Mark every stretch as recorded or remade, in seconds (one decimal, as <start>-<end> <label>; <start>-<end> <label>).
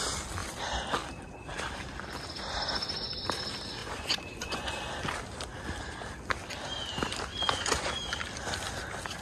0.0-3.8 recorded; 3.8-4.7 remade; 4.7-7.3 recorded; 7.3-7.9 remade; 7.9-9.2 recorded